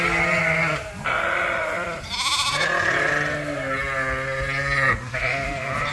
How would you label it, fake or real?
real